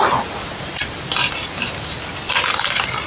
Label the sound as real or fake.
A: real